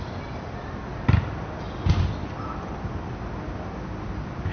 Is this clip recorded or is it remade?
recorded